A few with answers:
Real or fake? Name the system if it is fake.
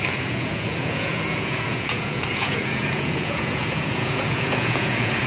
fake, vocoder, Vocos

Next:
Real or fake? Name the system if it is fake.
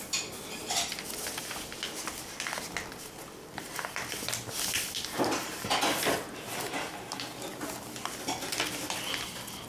real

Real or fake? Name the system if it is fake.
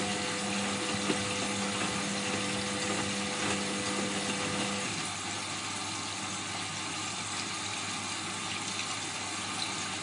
real